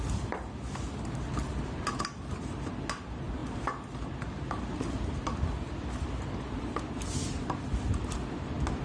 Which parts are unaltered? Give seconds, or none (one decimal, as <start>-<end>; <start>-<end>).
0.0-8.8